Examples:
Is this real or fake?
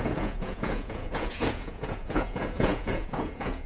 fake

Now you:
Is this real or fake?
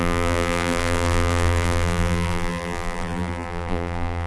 fake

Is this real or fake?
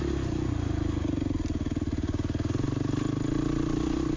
real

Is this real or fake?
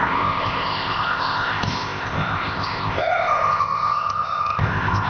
fake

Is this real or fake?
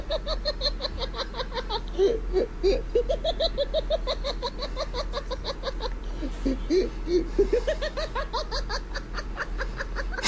real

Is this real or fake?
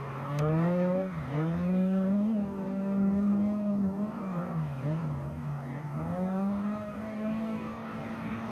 fake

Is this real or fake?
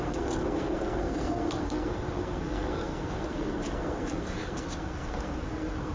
fake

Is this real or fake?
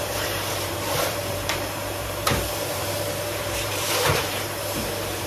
fake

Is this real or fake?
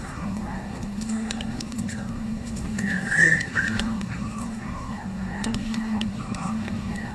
fake